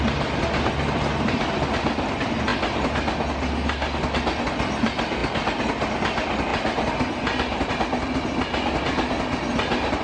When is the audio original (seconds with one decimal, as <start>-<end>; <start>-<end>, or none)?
0.0-10.0